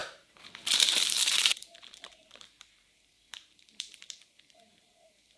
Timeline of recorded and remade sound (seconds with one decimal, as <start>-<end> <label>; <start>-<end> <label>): 0.0-5.4 remade